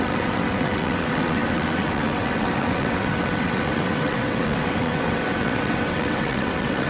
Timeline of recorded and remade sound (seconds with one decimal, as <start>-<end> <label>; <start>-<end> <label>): 0.0-6.9 remade